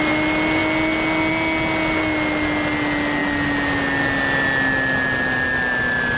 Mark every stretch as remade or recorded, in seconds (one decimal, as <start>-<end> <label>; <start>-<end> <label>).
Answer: 0.0-6.2 recorded